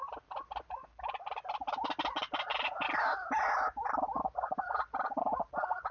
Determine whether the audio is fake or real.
real